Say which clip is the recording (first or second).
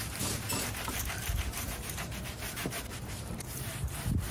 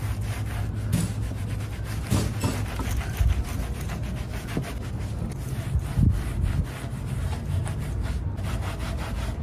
second